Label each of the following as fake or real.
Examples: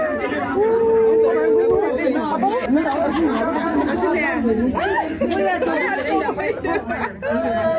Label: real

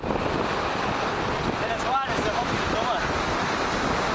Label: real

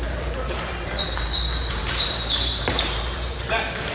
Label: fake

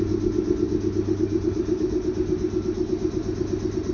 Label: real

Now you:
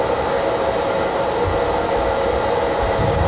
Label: real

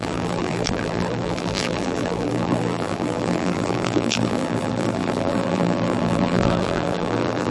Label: fake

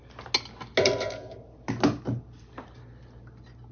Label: real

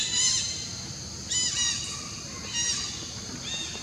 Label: real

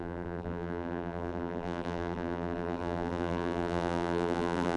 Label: fake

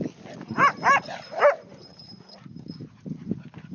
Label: real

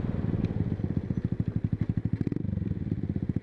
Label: real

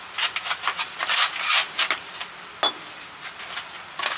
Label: real